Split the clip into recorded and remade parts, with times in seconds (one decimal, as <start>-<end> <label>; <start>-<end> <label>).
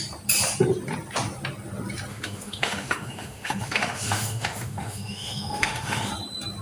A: 0.0-2.1 recorded; 2.1-6.1 remade; 6.1-6.6 recorded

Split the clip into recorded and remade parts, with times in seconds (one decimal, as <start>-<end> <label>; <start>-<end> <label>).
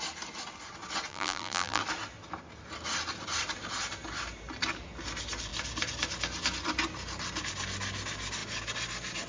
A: 0.0-1.1 recorded; 1.1-1.8 remade; 1.8-9.3 recorded